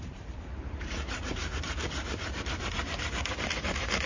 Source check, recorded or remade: remade